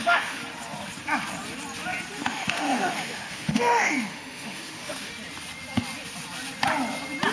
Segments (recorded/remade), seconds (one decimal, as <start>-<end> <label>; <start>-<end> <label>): 0.0-0.4 remade; 0.4-2.2 recorded; 2.2-5.1 remade; 5.1-7.3 recorded